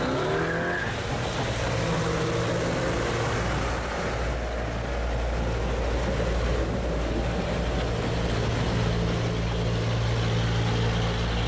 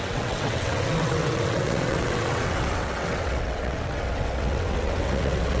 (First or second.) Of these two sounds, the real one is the first